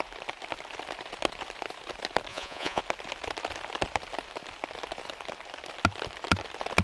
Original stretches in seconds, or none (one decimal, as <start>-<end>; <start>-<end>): 0.0-2.3; 2.8-6.8

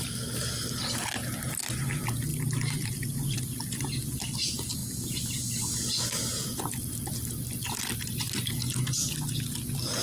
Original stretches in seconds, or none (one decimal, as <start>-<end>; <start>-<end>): 0.0-2.3; 3.1-10.0